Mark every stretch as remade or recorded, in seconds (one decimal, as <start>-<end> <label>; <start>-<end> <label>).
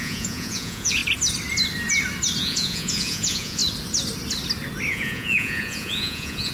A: 0.0-1.0 remade; 1.0-2.4 recorded; 2.4-3.6 remade; 3.6-4.9 recorded; 4.9-6.5 remade